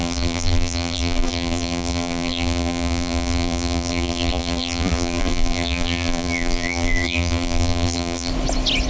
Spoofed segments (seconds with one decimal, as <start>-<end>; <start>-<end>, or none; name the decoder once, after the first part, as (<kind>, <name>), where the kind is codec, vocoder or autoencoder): 0.0-8.3 (vocoder, BigVGAN v2)